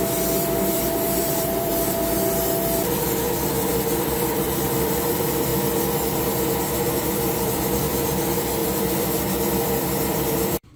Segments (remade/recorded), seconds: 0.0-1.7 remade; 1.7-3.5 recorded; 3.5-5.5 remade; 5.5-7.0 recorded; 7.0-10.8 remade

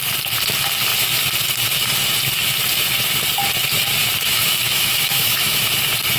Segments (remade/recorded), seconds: 0.0-4.0 recorded; 4.0-5.7 remade; 5.7-6.2 recorded

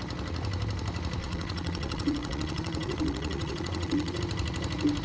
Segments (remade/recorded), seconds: 0.0-1.2 recorded; 1.2-4.2 remade; 4.2-5.0 recorded

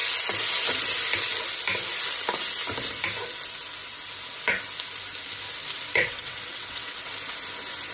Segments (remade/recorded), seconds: 0.0-5.9 recorded; 5.9-7.1 remade; 7.1-7.9 recorded

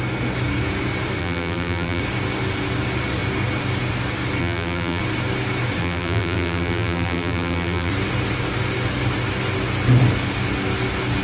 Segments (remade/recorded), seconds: 0.0-1.2 recorded; 1.2-2.0 remade; 2.0-4.4 recorded; 4.4-5.0 remade; 5.0-5.8 recorded; 5.8-7.9 remade; 7.9-11.2 recorded

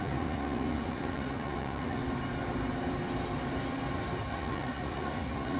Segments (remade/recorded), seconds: 0.0-2.0 remade; 2.0-4.3 recorded; 4.3-5.6 remade

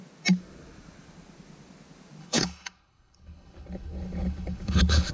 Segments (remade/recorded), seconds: 0.0-2.2 recorded; 2.2-5.1 remade

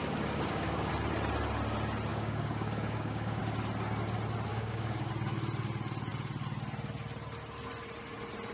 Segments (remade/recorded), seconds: 0.0-0.9 remade; 0.9-2.1 recorded; 2.1-3.4 remade; 3.4-4.5 recorded; 4.5-5.1 remade; 5.1-8.5 recorded